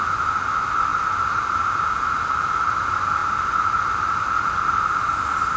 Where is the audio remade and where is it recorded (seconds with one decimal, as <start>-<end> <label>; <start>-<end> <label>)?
0.0-5.6 recorded